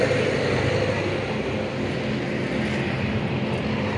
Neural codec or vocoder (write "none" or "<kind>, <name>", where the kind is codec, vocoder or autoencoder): none